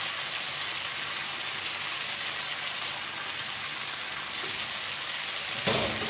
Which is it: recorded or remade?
recorded